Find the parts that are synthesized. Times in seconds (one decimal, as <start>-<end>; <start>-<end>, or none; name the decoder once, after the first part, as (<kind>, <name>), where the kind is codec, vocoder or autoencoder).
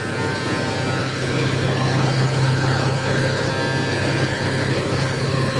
1.0-3.5 (codec, HILCodec); 3.9-5.6